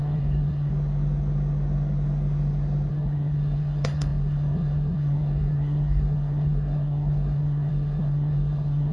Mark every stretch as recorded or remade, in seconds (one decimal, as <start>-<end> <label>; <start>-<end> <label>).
0.0-0.7 remade; 0.7-2.9 recorded; 2.9-8.9 remade